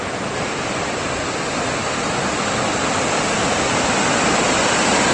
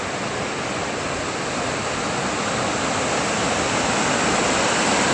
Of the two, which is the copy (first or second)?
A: first